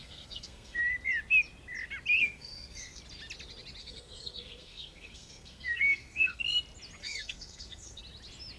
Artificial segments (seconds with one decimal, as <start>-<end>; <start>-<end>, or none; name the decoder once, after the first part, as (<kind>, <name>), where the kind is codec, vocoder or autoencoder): 0.0-0.8 (codec, SNAC); 2.2-3.0; 3.8-6.4; 7.0-8.0